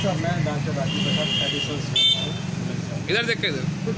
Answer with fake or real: real